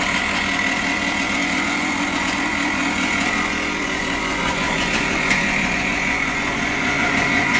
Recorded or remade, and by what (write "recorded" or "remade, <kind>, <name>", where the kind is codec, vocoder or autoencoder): remade, vocoder, Vocos